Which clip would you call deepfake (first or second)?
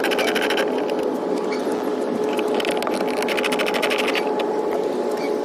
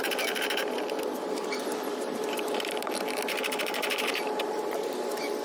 second